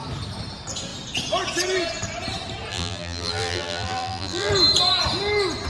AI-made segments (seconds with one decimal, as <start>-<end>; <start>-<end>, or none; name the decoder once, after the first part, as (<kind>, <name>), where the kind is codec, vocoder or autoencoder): 2.7-4.5 (vocoder, BigVGAN v2)